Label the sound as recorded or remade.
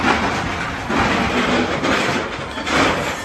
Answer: recorded